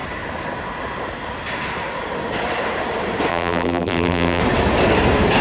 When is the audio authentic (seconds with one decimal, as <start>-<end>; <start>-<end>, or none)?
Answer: 0.0-3.3; 4.4-5.4